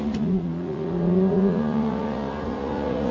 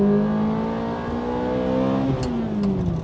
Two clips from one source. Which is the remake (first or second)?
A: first